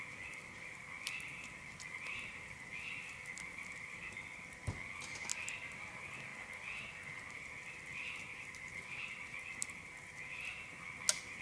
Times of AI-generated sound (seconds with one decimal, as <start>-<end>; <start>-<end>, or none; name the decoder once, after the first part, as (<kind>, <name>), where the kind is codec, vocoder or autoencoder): none

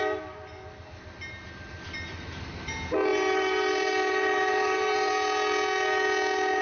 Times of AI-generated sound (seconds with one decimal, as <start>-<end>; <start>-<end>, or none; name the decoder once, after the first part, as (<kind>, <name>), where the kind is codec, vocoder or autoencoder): 3.1-5.1 (vocoder, BigVGAN v2)

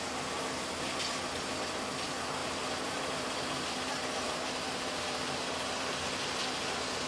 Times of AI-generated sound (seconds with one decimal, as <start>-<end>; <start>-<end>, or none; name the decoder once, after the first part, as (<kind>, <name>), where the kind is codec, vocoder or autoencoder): 2.4-6.2 (vocoder, BigVGAN v2)

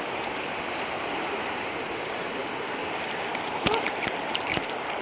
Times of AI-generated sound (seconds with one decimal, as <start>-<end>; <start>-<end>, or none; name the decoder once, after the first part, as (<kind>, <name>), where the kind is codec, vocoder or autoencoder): 0.0-2.4 (vocoder, BigVGAN v2); 3.3-5.0

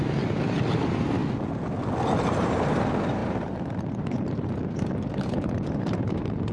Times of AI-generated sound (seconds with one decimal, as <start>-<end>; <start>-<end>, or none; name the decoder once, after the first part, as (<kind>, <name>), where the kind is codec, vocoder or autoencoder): 0.0-1.2 (vocoder, BigVGAN v2); 2.2-6.5

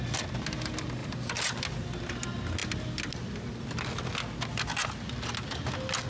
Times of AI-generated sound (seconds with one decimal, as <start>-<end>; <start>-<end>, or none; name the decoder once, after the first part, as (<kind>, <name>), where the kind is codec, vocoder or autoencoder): none